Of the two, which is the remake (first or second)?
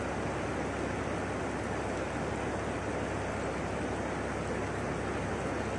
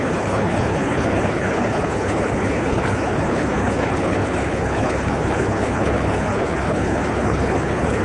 second